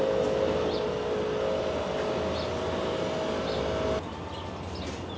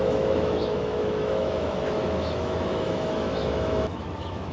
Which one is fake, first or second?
second